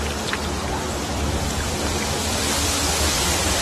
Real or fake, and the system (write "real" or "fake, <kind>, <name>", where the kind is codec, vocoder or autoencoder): fake, vocoder, BigVGAN v2